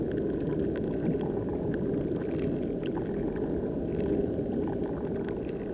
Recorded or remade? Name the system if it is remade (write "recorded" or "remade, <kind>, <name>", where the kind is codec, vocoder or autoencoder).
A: recorded